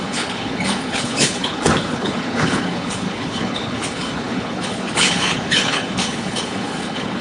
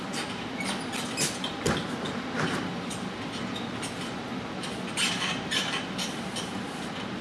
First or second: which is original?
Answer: second